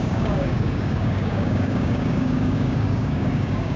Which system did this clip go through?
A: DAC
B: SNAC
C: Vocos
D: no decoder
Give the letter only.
A